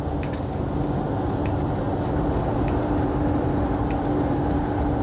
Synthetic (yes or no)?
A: no